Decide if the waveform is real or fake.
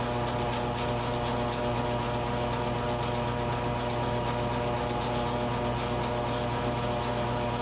real